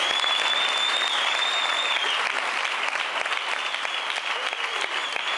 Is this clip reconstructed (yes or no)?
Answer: no